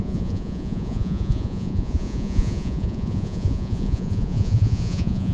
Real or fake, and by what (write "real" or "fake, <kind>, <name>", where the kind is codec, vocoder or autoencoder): fake, vocoder, Vocos